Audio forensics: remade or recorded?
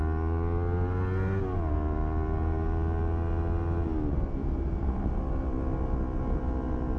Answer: recorded